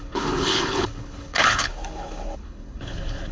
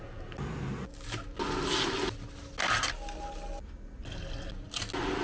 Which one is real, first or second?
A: second